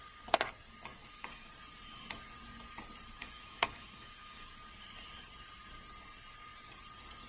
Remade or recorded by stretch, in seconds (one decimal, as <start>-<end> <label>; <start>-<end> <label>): 0.0-1.0 recorded; 1.0-1.5 remade; 1.5-3.2 recorded; 3.2-4.5 remade; 4.5-7.3 recorded